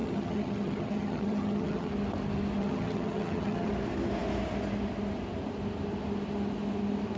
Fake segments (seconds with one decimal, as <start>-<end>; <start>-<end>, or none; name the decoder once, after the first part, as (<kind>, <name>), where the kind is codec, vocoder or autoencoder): 0.0-1.9 (vocoder, HiFi-GAN); 2.6-3.7